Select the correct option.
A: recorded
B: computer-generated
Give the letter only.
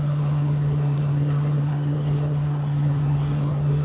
B